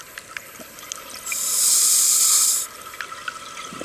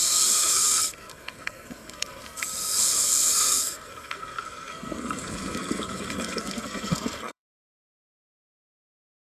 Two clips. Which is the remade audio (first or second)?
second